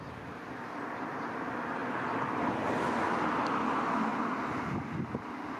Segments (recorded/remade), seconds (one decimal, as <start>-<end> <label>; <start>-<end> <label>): 0.0-5.6 recorded